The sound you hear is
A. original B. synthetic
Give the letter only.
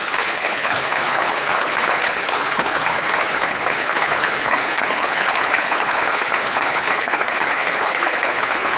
B